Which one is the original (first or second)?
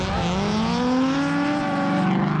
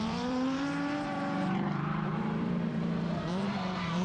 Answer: first